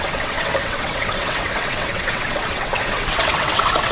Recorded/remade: remade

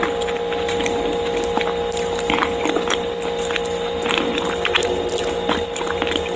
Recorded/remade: recorded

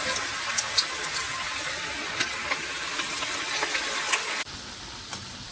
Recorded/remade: recorded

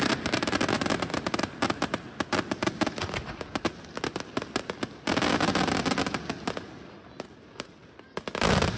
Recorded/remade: recorded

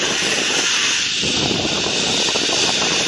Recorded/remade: recorded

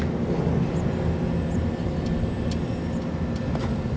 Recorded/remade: recorded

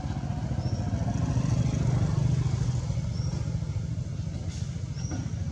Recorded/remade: recorded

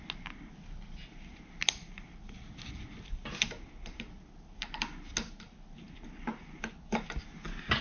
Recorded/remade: recorded